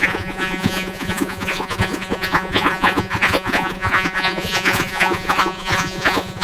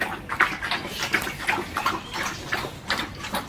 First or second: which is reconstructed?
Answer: first